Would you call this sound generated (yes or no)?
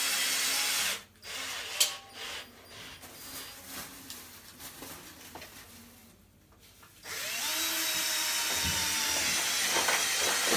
no